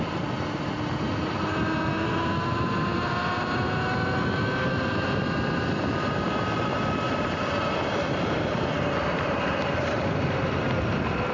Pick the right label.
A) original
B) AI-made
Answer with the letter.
A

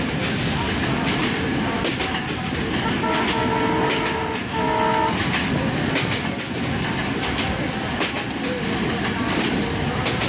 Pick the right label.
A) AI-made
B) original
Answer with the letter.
B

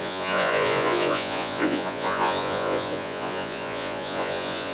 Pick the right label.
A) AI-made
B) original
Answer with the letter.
A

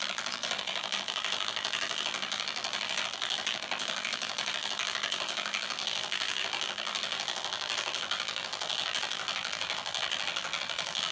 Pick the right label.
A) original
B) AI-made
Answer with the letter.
B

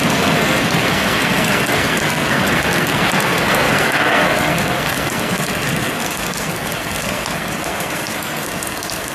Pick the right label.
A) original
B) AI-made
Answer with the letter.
B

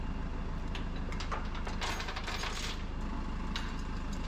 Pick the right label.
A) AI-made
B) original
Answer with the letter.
B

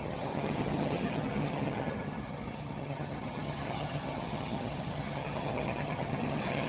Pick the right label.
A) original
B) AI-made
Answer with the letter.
B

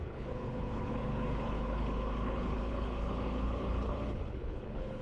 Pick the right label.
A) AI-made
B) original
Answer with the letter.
A